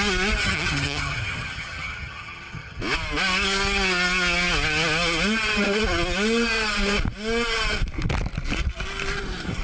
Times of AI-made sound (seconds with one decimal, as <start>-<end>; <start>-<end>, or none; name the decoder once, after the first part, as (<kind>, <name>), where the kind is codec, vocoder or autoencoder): 0.4-2.8 (vocoder, HiFi-GAN)